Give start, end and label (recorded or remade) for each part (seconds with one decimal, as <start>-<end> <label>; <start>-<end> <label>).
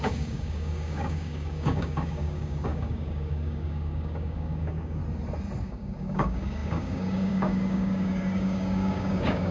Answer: 0.0-5.0 remade; 5.0-5.6 recorded; 5.6-9.5 remade